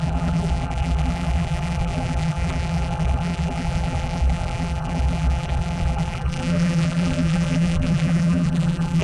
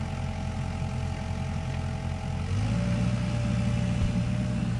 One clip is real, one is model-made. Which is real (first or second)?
second